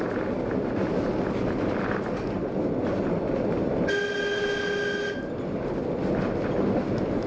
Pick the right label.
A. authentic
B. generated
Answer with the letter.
A